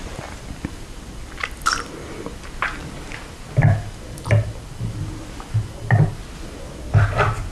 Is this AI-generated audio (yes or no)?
no